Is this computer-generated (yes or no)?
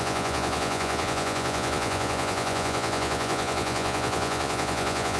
yes